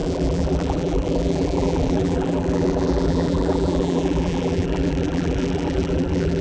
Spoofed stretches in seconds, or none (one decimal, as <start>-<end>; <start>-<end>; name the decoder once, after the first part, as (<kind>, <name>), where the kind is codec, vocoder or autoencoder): 0.0-6.4 (vocoder, BigVGAN v2)